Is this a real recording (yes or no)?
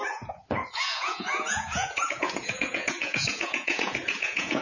no